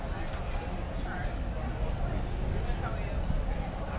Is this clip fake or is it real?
real